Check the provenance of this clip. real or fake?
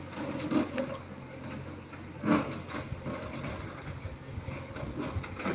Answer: real